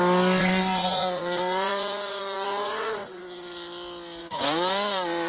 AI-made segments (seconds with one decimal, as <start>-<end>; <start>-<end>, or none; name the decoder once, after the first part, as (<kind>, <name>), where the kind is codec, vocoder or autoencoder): 0.4-3.2 (vocoder, Vocos); 4.2-5.3